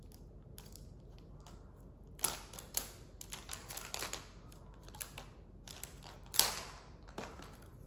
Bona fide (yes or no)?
yes